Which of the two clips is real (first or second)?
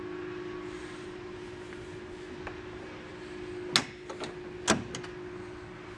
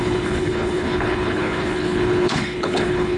first